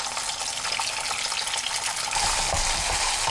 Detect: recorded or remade recorded